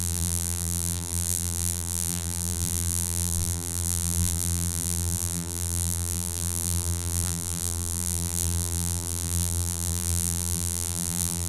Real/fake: fake